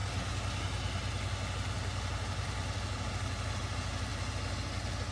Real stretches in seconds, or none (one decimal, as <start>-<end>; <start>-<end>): 0.0-5.1